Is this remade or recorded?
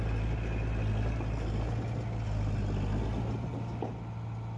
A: recorded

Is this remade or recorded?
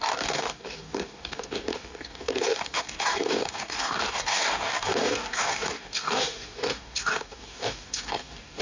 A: remade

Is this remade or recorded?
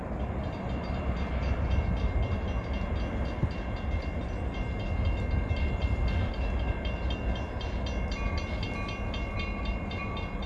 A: recorded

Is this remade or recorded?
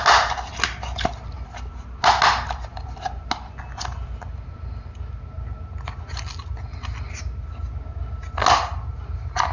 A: recorded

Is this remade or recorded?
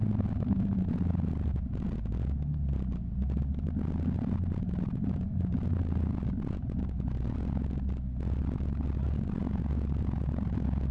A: recorded